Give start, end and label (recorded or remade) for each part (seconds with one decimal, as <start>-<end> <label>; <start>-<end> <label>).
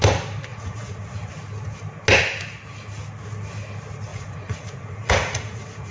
0.0-0.5 recorded; 0.5-1.3 remade; 1.3-4.1 recorded; 4.1-5.9 remade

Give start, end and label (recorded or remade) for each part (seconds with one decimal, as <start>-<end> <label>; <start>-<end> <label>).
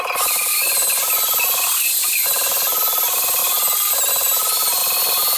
0.0-5.4 recorded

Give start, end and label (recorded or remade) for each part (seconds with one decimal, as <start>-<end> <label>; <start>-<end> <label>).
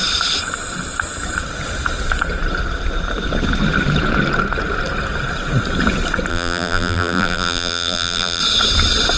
0.0-6.3 recorded; 6.3-8.4 remade; 8.4-9.2 recorded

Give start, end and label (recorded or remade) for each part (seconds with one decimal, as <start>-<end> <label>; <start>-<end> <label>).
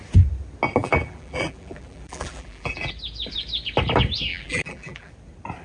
0.0-0.8 recorded; 0.8-2.9 remade; 2.9-4.3 recorded; 4.3-5.1 remade; 5.1-5.6 recorded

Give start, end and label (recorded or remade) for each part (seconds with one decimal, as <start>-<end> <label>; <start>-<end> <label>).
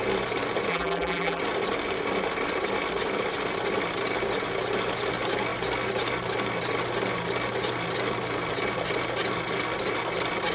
0.0-0.7 recorded; 0.7-1.4 remade; 1.4-10.5 recorded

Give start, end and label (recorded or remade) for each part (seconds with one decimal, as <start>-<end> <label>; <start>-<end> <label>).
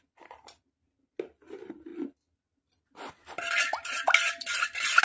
0.0-5.0 recorded